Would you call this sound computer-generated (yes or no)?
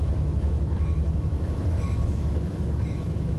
yes